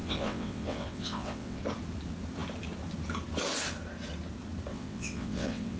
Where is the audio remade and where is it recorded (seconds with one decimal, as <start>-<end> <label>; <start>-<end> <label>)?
0.0-1.6 remade; 1.6-4.7 recorded; 4.7-5.8 remade